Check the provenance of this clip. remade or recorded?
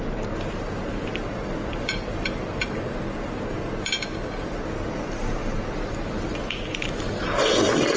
recorded